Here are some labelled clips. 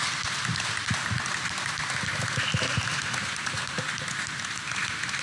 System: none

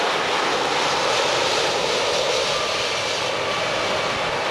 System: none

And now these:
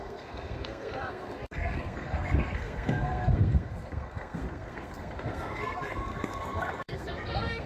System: codec, SNAC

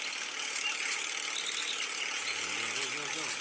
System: none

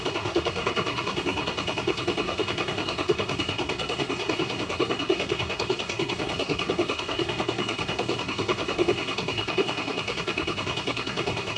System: codec, SNAC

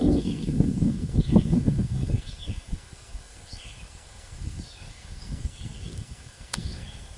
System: codec, SNAC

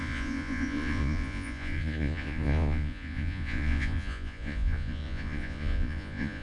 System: vocoder, Vocos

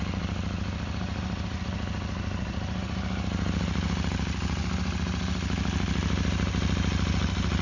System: none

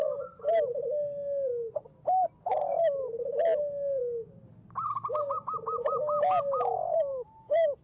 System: none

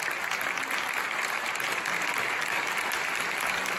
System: none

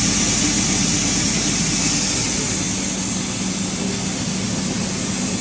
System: none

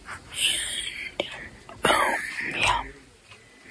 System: none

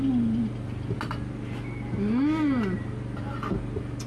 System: none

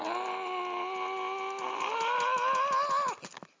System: none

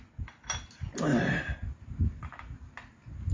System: none